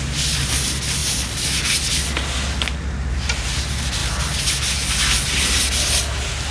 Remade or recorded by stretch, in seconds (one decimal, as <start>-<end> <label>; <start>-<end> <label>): 0.0-6.5 recorded